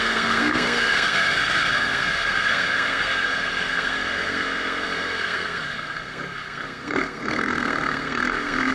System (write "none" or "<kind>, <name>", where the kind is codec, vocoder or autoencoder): codec, SNAC